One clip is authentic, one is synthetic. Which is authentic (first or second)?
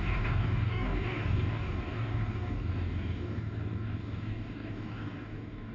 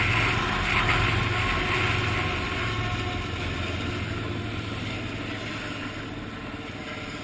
second